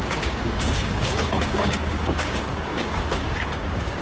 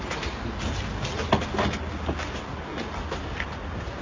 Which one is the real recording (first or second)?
second